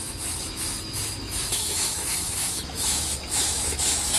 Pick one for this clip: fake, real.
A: fake